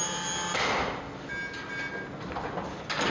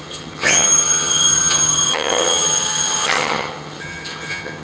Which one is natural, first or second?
first